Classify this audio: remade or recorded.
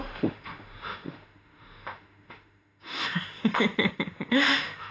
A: remade